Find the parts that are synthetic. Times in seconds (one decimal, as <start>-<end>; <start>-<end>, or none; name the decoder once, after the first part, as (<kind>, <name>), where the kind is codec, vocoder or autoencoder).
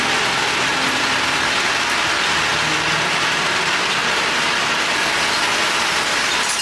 none